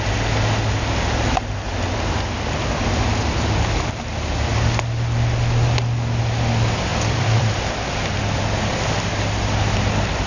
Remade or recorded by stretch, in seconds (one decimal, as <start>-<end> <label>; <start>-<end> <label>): 0.0-6.9 recorded; 6.9-8.4 remade; 8.4-10.3 recorded